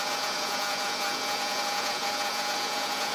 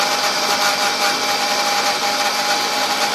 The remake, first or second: first